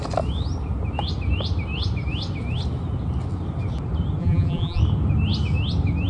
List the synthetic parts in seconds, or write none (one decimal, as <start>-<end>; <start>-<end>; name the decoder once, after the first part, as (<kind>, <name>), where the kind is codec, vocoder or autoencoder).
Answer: 4.2-4.8 (vocoder, BigVGAN v2)